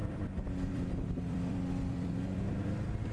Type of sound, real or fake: fake